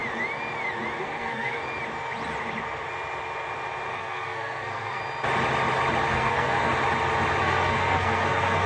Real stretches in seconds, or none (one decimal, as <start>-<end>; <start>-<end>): 0.0-1.0; 1.6-3.9; 5.0-6.1; 6.7-7.4

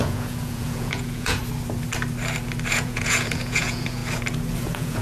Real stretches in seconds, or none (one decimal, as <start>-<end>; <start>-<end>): 1.4-2.7; 4.0-4.6

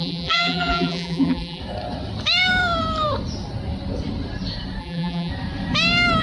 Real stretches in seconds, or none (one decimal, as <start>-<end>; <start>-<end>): 1.6-4.8; 5.3-6.2

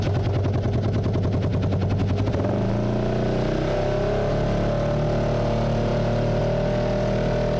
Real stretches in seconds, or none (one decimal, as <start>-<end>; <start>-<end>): 0.0-7.6

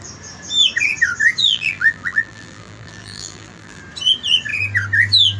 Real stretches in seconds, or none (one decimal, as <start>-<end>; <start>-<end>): 0.0-1.4; 3.8-5.4

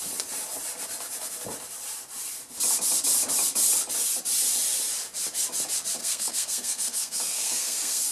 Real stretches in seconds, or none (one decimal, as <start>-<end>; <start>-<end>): 0.0-6.0

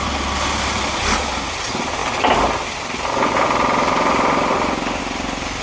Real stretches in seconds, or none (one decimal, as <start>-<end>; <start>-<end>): 0.0-5.6